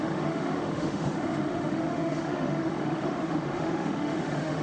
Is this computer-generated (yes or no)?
yes